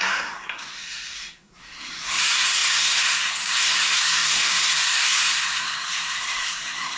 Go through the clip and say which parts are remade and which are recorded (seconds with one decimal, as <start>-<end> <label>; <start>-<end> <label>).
0.0-7.0 remade